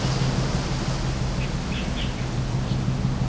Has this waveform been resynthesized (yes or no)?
no